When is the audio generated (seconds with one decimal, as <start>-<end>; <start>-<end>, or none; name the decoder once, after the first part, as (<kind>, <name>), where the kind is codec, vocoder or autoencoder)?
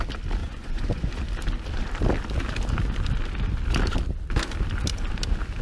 0.4-1.1 (vocoder, Vocos)